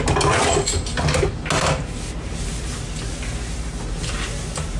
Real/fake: real